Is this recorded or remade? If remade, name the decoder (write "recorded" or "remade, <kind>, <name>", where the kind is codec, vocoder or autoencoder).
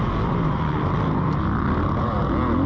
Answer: recorded